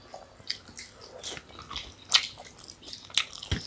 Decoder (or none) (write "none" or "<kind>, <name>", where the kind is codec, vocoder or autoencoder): none